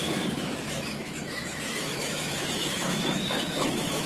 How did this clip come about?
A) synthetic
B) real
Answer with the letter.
A